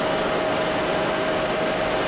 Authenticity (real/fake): real